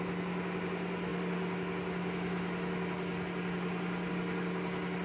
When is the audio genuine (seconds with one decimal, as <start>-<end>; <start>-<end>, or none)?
0.0-5.0